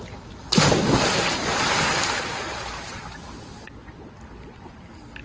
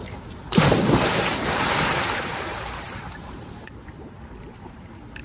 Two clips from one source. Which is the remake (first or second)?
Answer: second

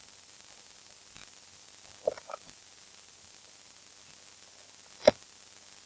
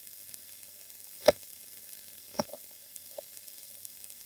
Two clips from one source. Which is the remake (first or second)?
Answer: second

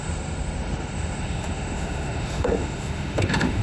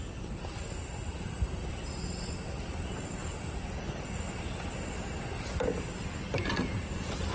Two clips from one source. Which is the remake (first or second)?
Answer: first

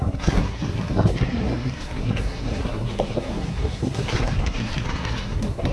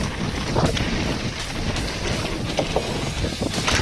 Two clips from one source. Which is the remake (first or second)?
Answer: first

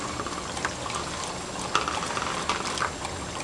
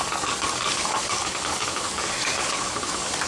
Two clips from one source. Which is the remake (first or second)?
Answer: second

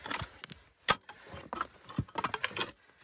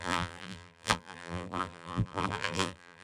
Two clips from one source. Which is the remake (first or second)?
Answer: second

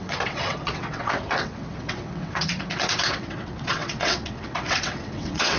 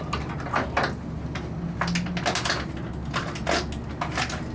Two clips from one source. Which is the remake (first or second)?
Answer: first